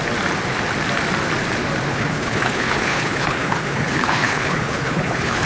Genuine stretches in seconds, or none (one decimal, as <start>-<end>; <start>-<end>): 0.0-1.9